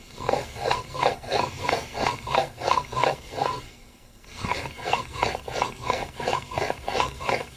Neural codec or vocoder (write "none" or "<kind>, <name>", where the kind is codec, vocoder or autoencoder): codec, SNAC